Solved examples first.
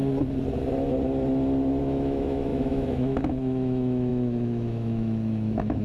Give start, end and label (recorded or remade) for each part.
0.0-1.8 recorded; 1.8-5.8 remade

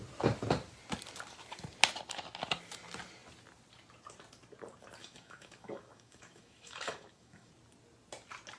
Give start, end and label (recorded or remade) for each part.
0.0-5.0 recorded; 5.0-7.5 remade; 7.5-8.6 recorded

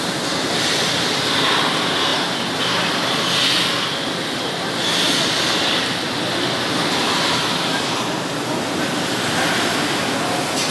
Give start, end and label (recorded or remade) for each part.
0.0-10.7 recorded

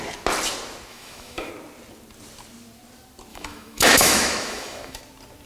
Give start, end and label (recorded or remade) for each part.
0.0-0.9 recorded; 0.9-1.5 remade; 1.5-3.3 recorded; 3.3-5.0 remade; 5.0-5.5 recorded

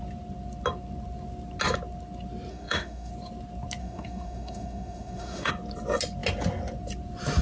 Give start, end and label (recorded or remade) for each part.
0.0-2.5 recorded; 2.5-3.1 remade; 3.1-3.8 recorded; 3.8-5.5 remade; 5.5-7.4 recorded

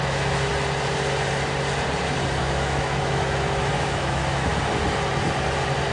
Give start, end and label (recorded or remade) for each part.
0.0-0.5 remade; 0.5-2.4 recorded; 2.4-4.5 remade; 4.5-5.9 recorded

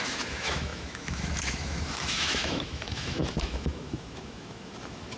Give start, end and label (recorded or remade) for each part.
0.0-5.2 remade

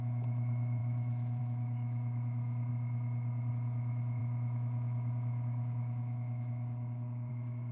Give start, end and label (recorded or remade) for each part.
0.0-2.7 remade; 2.7-3.5 recorded; 3.5-7.7 remade